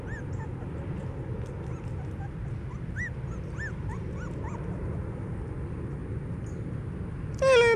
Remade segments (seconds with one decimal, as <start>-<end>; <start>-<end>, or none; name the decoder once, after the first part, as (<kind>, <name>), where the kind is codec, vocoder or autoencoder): none